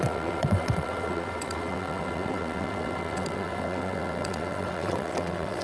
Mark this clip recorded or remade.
remade